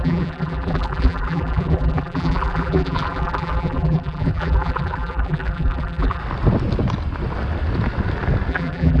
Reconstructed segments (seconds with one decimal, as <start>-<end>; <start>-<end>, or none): 0.0-6.2; 8.5-9.0